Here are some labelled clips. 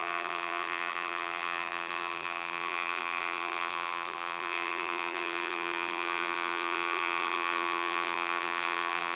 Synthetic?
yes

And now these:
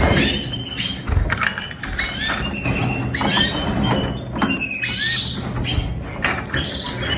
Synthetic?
no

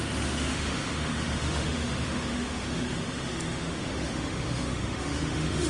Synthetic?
yes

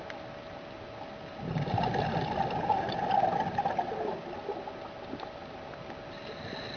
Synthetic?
no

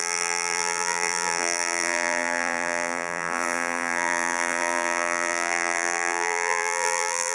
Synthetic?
yes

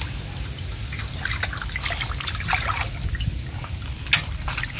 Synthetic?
no